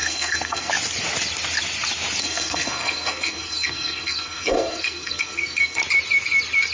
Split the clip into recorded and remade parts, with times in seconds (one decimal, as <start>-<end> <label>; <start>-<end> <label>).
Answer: 0.0-0.7 remade; 0.7-2.2 recorded; 2.2-5.8 remade; 5.8-6.7 recorded